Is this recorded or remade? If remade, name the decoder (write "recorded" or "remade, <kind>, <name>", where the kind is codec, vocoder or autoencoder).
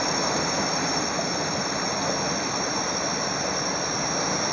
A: recorded